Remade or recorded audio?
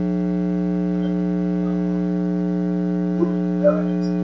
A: recorded